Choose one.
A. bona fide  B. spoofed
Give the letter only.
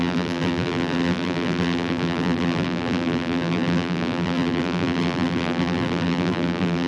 B